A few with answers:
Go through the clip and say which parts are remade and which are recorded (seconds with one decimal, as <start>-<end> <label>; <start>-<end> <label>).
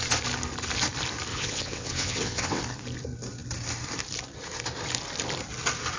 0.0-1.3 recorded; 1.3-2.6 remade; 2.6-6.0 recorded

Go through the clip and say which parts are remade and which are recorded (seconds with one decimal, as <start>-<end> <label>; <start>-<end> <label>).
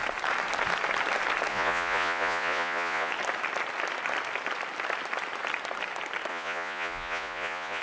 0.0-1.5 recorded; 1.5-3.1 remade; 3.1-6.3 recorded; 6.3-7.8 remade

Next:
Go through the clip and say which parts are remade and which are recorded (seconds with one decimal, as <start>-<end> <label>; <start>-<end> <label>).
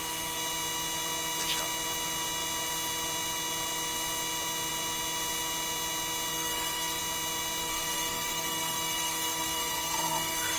0.0-6.3 recorded; 6.3-7.0 remade; 7.0-7.6 recorded; 7.6-10.6 remade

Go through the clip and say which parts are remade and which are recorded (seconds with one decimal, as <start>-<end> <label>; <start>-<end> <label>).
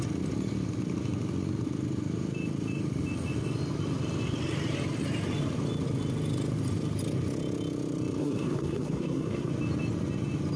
0.0-8.2 recorded; 8.2-9.5 remade; 9.5-10.6 recorded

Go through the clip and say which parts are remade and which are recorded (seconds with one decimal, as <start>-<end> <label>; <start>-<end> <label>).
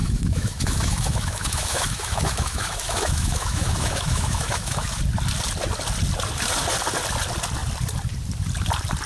0.0-5.0 remade; 5.0-9.1 recorded